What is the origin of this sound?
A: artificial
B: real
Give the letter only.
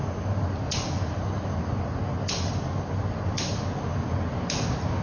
B